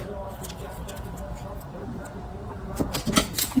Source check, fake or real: real